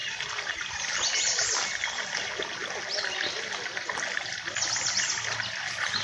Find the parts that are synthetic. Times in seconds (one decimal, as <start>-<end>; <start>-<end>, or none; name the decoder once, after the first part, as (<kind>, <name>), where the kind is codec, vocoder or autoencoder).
none